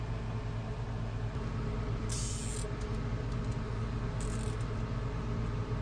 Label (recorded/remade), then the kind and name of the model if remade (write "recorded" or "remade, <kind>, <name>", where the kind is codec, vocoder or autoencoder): recorded